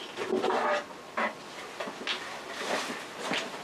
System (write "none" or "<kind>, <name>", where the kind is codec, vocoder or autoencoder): none